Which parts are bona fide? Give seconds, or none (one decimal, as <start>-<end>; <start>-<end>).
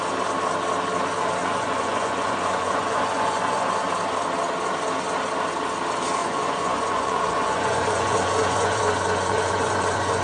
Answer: 0.0-1.4; 3.7-6.2